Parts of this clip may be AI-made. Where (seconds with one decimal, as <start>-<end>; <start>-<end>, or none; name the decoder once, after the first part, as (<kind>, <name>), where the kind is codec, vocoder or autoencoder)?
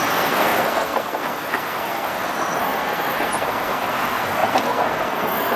0.0-5.6 (codec, SNAC)